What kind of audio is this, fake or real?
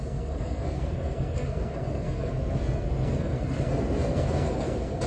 fake